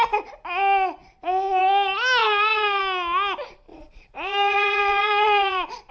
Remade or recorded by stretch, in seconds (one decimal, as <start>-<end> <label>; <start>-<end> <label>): 0.0-2.2 recorded; 2.2-2.8 remade; 2.8-3.7 recorded; 3.7-5.9 remade